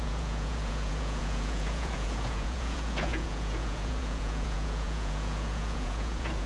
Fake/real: fake